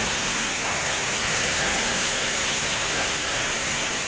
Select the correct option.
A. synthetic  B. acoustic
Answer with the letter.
A